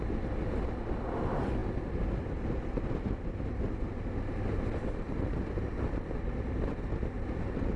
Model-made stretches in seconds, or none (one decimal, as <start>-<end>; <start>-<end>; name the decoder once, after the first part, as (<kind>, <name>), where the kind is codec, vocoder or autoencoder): none

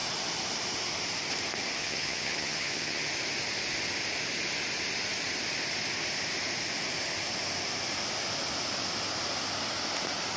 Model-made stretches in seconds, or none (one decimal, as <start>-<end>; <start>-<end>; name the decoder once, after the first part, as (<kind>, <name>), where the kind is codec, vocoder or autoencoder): 1.8-3.1 (vocoder, HiFi-GAN)

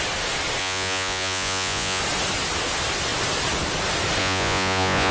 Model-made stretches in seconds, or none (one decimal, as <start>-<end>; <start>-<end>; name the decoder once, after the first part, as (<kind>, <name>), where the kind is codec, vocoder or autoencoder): 0.6-2.0 (vocoder, Vocos); 4.2-5.1